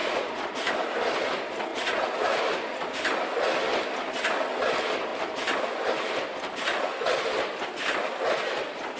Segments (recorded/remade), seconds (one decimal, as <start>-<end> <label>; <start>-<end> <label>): 0.0-0.7 remade; 0.7-1.7 recorded; 1.7-2.4 remade; 2.4-9.0 recorded

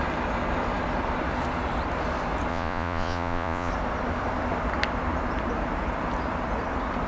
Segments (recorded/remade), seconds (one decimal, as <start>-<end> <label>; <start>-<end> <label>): 0.0-2.5 recorded; 2.5-3.7 remade; 3.7-7.1 recorded

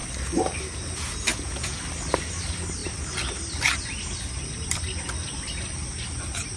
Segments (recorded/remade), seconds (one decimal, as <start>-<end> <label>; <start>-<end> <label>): 0.0-1.3 recorded; 1.3-1.8 remade; 1.8-6.6 recorded

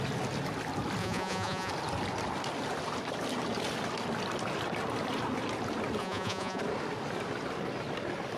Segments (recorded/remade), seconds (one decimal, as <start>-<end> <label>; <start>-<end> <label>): 0.0-1.0 recorded; 1.0-1.7 remade; 1.7-6.0 recorded; 6.0-6.6 remade; 6.6-8.4 recorded

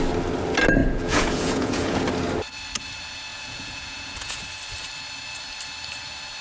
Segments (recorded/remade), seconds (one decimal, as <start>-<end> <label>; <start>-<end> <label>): 0.0-0.8 recorded; 0.8-2.1 remade; 2.1-3.3 recorded; 3.3-4.4 remade; 4.4-6.4 recorded

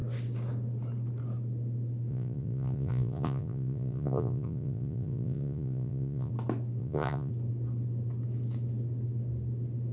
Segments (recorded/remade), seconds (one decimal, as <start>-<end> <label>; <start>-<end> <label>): 0.0-2.1 recorded; 2.1-6.3 remade; 6.3-6.8 recorded; 6.8-7.3 remade; 7.3-9.9 recorded